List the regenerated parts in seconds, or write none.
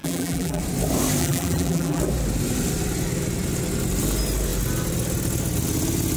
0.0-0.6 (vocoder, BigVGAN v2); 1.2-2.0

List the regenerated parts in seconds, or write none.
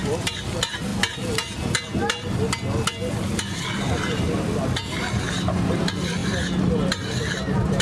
0.0-0.9 (vocoder, BigVGAN v2); 5.6-7.8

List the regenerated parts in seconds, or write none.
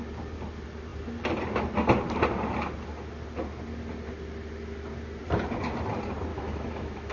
6.3-7.1 (autoencoder, DAC-VAE)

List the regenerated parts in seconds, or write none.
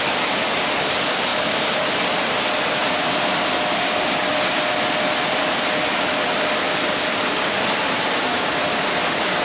none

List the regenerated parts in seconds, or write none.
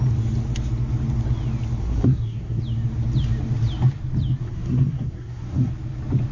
1.8-2.6 (codec, SNAC); 4.4-5.7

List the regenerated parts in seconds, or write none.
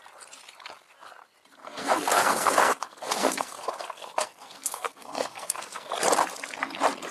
1.6-5.9 (codec, SNAC)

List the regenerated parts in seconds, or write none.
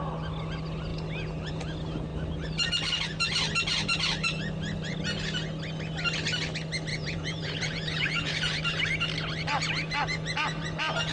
6.9-8.6 (vocoder, Vocos)